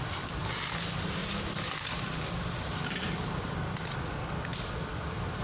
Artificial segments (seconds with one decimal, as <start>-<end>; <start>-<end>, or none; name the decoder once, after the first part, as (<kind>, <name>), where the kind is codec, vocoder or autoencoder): none